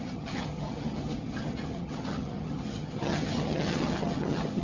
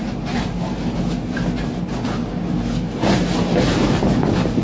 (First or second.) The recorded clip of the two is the second